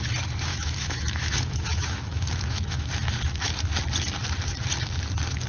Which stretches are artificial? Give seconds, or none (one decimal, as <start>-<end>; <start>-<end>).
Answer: 0.5-2.9